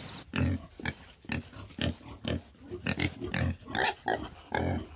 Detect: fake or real real